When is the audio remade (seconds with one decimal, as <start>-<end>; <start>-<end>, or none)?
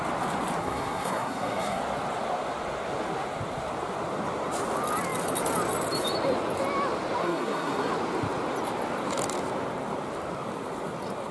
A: 0.6-1.8; 7.2-7.9